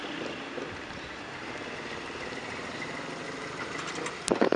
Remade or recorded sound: recorded